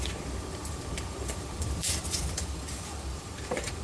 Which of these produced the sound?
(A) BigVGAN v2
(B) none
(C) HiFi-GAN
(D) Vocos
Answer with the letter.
A